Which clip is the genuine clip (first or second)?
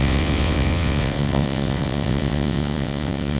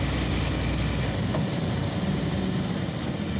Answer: second